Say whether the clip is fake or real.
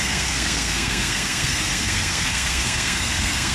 fake